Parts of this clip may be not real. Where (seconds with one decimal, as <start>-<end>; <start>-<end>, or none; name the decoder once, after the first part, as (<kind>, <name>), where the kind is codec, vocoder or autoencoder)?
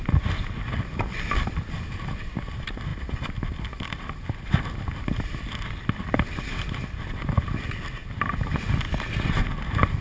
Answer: none